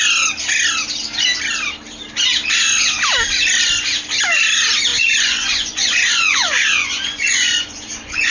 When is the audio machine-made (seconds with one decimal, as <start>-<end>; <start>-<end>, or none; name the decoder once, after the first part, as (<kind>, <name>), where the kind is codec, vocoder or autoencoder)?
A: 4.9-8.3 (vocoder, Vocos)